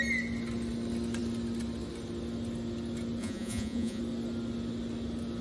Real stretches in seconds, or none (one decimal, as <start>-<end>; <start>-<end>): 0.0-3.2; 4.0-5.4